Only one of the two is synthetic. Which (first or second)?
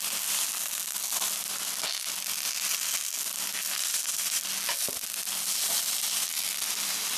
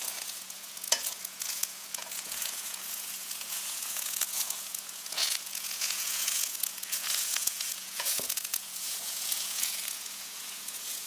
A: second